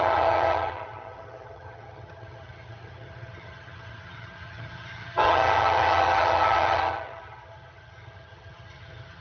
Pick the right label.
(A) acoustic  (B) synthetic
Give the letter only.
B